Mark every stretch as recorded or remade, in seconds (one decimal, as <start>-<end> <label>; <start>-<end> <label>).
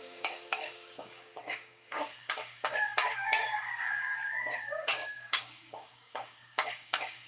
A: 0.0-7.3 remade